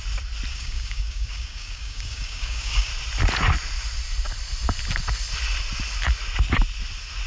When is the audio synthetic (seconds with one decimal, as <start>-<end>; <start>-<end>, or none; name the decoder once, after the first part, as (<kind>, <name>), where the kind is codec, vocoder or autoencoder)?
0.5-2.9 (codec, DAC)

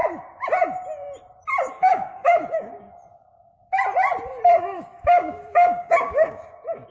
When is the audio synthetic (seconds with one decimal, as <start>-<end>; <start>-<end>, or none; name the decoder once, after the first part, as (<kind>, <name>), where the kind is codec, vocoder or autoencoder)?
1.7-3.6 (codec, DAC); 4.6-6.9

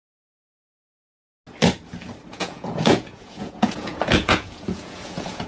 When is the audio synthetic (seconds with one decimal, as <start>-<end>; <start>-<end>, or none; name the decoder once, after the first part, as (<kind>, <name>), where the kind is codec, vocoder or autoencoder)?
2.3-5.5 (vocoder, Vocos)

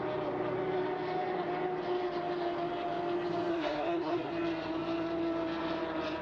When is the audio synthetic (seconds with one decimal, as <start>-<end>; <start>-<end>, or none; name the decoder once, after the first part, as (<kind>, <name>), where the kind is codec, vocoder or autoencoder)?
3.5-4.3 (codec, SNAC)

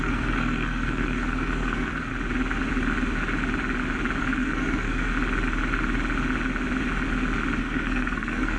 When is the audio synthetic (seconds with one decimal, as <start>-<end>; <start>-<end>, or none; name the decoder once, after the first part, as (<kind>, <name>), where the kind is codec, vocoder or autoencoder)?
0.0-2.1 (codec, SNAC); 4.2-5.1; 7.6-8.6

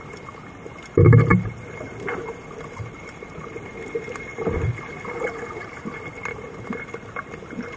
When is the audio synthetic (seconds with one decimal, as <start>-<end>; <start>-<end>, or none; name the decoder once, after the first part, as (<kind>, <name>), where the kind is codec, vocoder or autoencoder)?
1.3-3.7 (vocoder, BigVGAN v2); 4.3-6.4

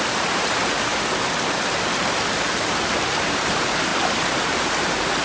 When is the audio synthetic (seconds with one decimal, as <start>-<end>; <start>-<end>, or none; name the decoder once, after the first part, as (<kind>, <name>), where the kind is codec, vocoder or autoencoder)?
0.0-0.9 (vocoder, BigVGAN v2); 3.2-3.9; 4.6-5.2